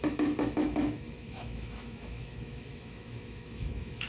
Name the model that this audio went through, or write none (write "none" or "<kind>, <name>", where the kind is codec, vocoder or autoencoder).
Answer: autoencoder, DAC-VAE